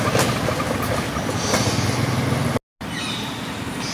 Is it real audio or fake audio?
real